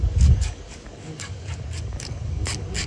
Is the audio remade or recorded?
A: remade